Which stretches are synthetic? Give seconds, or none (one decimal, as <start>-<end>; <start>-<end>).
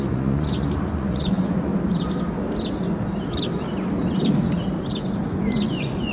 0.0-1.7; 5.4-6.1